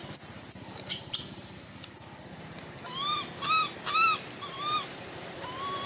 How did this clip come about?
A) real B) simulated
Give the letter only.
A